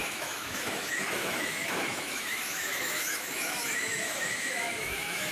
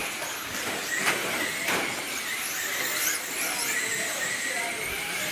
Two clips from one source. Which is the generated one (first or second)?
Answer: first